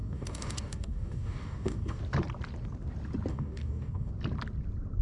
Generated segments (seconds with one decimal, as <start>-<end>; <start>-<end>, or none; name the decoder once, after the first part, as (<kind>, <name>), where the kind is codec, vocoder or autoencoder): 0.0-2.0 (codec, DAC); 3.3-4.1